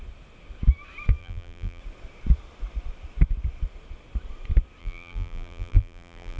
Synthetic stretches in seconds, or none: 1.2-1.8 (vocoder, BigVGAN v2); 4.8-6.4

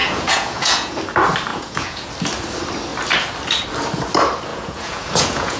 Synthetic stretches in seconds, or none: 0.0-1.0 (vocoder, Vocos); 1.5-2.1; 4.5-5.6